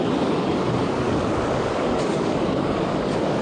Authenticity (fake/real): fake